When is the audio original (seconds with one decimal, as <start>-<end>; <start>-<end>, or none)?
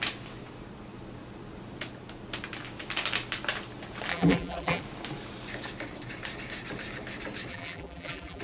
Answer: 0.0-4.1; 4.8-7.5